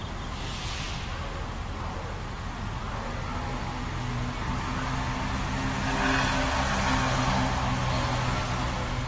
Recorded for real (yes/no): yes